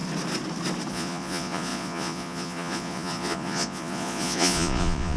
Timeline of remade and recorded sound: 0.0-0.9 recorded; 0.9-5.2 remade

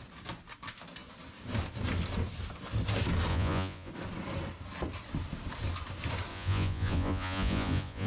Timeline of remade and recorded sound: 0.0-3.3 recorded; 3.3-3.9 remade; 3.9-6.3 recorded; 6.3-8.1 remade

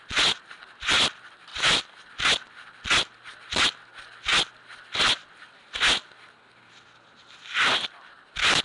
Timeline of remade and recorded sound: 0.0-8.6 recorded